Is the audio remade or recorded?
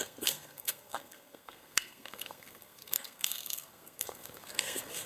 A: remade